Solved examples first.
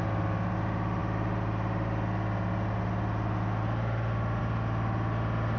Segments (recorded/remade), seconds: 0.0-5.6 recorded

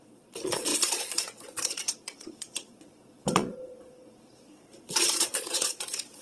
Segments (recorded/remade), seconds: 0.0-6.2 remade

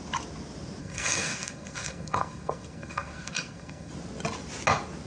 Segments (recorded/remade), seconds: 0.0-0.8 recorded; 0.8-3.9 remade; 3.9-5.1 recorded

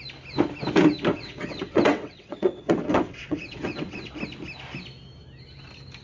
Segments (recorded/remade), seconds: 0.0-1.1 recorded; 1.1-4.1 remade; 4.1-6.0 recorded